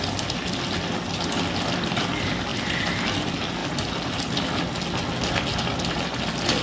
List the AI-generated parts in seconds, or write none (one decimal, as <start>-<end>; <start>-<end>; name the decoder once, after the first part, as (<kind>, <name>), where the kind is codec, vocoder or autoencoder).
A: none